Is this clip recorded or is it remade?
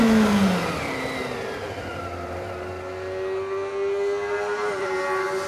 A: recorded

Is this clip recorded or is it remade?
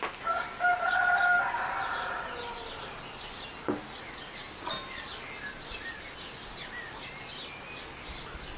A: recorded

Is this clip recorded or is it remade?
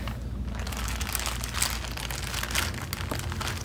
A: recorded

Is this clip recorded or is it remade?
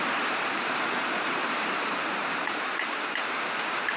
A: remade